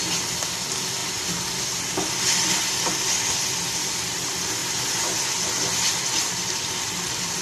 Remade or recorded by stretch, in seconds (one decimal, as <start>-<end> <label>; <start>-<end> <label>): 0.0-7.4 recorded